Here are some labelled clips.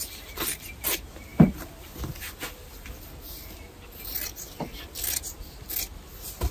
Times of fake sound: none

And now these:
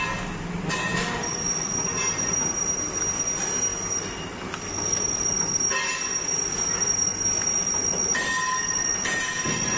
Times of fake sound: none

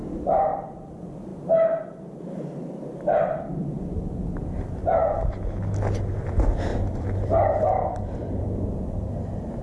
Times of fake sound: 6.7-8.4 (vocoder, BigVGAN v2)

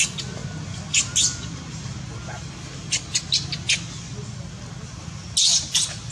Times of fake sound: 5.5-6.1 (vocoder, BigVGAN v2)

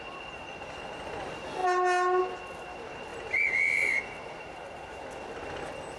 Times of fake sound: 3.1-5.0 (vocoder, BigVGAN v2)

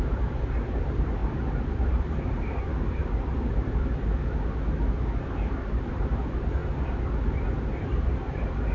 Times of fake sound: 0.0-1.2 (vocoder, BigVGAN v2); 1.9-3.0; 5.8-6.6; 8.1-8.7

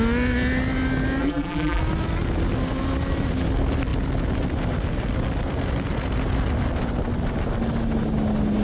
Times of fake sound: 1.2-1.8 (vocoder, BigVGAN v2)

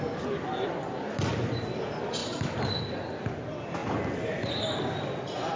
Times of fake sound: 2.2-2.8 (vocoder, BigVGAN v2)